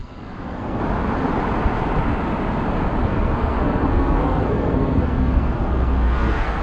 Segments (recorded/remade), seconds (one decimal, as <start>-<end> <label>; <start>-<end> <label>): 0.0-0.8 remade; 0.8-3.0 recorded; 3.0-6.6 remade